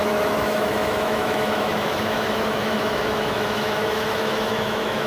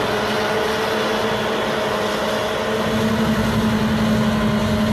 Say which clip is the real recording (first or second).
second